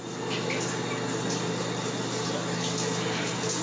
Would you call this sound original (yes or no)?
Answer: yes